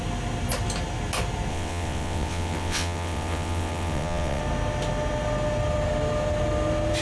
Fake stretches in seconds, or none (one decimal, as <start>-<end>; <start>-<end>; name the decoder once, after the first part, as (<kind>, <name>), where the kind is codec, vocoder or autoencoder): 1.5-4.4 (vocoder, WaveNeXt)